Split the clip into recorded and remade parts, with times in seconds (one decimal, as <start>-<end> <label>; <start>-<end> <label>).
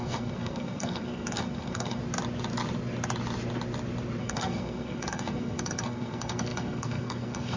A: 0.0-2.0 remade; 2.0-4.2 recorded; 4.2-7.6 remade